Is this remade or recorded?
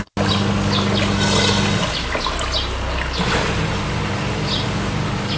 recorded